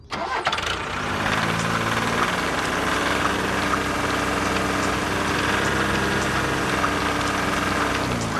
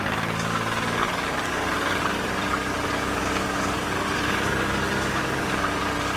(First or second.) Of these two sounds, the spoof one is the second